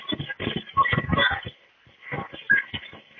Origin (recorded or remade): remade